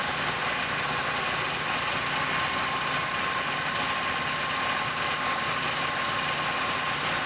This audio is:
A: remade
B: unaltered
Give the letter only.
B